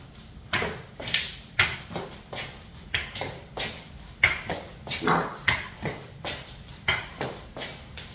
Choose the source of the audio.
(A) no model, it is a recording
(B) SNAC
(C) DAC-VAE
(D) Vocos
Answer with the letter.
A